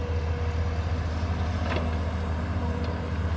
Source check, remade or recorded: recorded